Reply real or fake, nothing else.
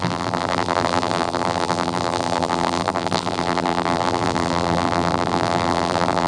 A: fake